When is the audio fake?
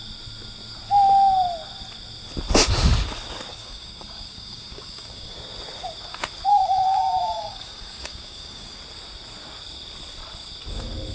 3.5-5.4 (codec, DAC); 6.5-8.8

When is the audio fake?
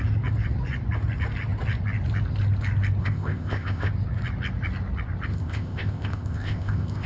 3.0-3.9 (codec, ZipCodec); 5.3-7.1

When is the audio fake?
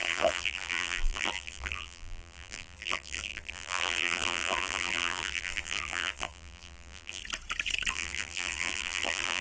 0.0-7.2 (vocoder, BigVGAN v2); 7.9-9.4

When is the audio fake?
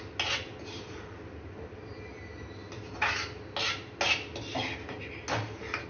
none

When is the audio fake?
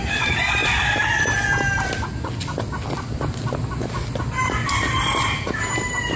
none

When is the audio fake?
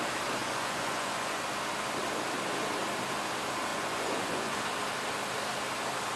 0.4-1.4 (vocoder, Vocos); 3.7-4.6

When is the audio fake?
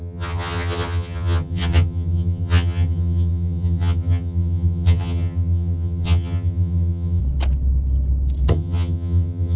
0.0-7.2 (vocoder, HiFi-GAN); 8.5-9.6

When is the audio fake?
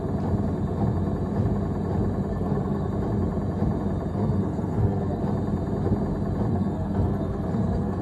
2.3-2.9 (codec, SNAC); 4.1-5.2; 6.5-8.0